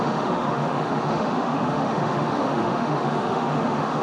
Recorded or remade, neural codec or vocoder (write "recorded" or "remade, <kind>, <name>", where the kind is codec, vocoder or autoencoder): remade, autoencoder, DAC-VAE